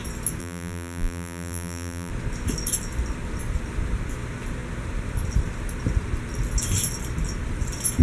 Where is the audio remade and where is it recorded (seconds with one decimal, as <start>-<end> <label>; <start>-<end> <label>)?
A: 0.0-0.4 recorded; 0.4-2.1 remade; 2.1-8.0 recorded